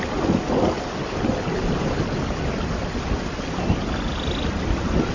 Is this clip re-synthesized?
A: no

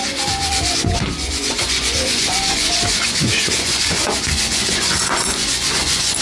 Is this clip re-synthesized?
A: yes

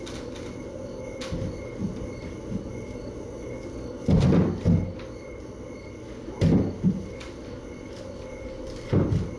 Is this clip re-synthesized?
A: no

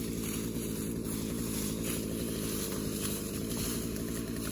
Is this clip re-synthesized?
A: no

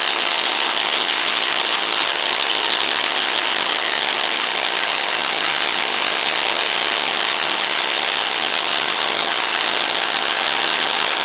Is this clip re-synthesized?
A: yes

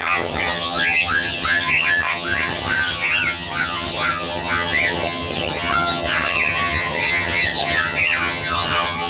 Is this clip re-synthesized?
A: yes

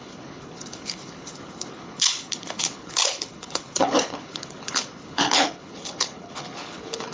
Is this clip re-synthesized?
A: yes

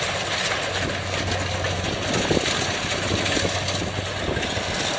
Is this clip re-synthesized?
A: no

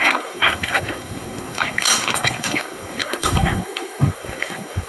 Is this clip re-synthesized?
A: yes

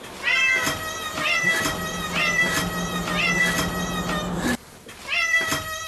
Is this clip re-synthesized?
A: no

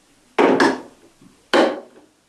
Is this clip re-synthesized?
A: no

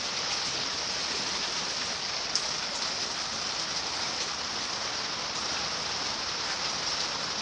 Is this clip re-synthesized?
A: no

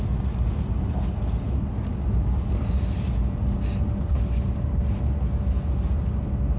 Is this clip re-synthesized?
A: no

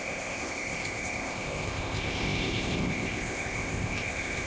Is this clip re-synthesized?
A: yes